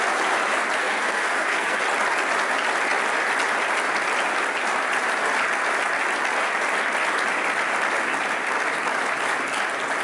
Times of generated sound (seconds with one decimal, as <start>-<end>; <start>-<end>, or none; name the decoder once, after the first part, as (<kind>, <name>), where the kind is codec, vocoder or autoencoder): 0.8-1.8 (codec, SNAC)

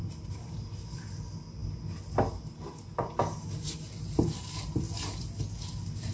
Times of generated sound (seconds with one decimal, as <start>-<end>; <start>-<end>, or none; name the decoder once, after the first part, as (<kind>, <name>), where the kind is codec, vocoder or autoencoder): none

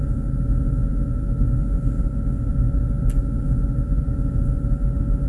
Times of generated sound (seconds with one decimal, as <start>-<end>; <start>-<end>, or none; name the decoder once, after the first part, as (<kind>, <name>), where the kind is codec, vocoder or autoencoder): none

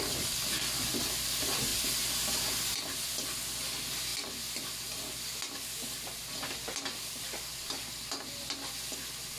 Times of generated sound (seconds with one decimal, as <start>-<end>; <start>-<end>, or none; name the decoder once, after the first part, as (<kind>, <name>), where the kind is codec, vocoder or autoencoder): none